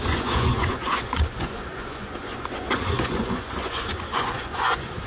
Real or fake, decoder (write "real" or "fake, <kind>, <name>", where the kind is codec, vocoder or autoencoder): fake, vocoder, Vocos